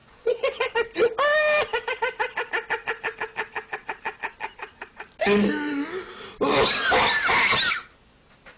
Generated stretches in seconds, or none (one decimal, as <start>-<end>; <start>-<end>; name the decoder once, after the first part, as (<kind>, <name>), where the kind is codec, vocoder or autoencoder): 0.0-0.7 (vocoder, Vocos)